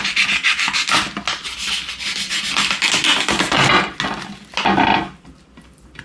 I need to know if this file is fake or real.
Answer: real